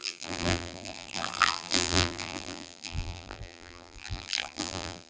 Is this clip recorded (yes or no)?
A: no